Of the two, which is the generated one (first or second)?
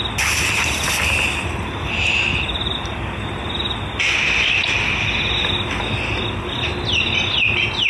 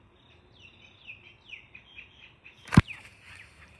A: second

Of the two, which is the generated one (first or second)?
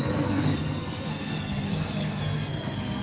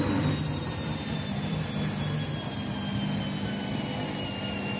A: first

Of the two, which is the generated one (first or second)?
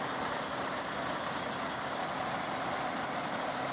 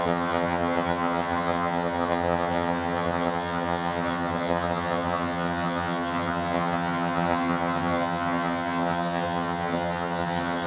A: second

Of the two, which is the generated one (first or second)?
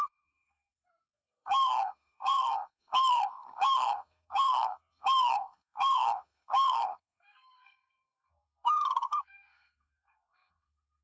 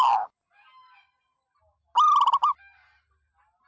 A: first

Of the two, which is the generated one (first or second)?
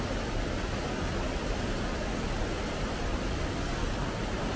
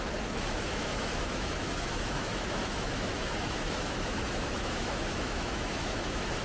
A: second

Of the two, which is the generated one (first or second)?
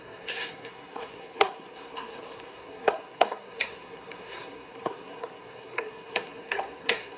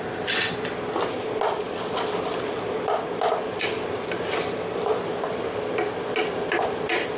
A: first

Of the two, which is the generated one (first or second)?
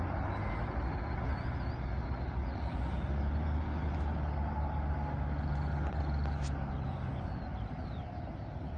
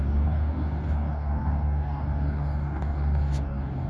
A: second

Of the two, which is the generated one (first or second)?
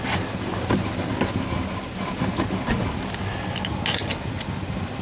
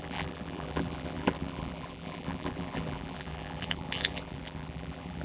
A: second